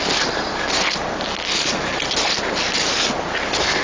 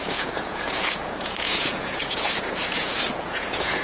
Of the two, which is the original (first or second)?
first